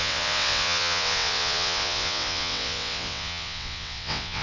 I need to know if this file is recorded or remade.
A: remade